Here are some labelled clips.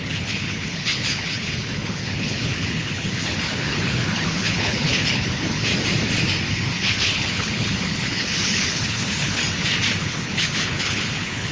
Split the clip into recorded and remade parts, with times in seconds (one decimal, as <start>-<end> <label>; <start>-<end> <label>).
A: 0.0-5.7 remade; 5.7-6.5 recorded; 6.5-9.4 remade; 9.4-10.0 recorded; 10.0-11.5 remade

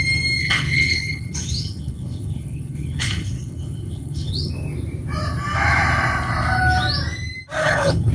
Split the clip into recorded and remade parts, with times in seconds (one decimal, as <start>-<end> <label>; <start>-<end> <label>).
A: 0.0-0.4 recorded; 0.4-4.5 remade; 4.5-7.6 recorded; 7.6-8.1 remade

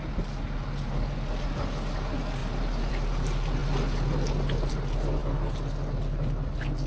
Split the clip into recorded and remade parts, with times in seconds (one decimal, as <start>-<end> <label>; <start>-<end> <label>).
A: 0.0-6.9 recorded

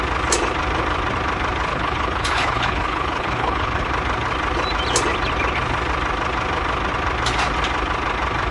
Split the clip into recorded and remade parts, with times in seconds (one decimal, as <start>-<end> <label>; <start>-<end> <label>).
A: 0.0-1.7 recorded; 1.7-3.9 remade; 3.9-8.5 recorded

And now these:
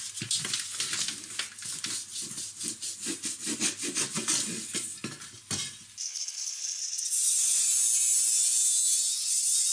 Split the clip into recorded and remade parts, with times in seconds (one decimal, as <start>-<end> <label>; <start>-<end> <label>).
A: 0.0-6.1 recorded; 6.1-6.8 remade; 6.8-9.7 recorded

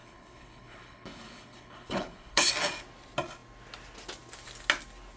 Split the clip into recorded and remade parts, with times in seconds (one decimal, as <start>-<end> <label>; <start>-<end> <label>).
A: 0.0-2.5 remade; 2.5-5.2 recorded